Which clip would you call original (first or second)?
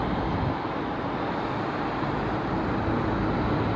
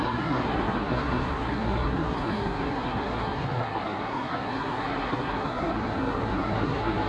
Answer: first